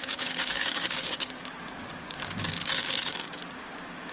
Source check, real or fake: fake